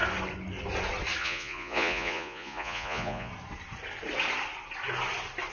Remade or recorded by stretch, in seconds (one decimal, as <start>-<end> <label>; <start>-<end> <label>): 0.0-1.2 recorded; 1.2-3.3 remade; 3.3-5.5 recorded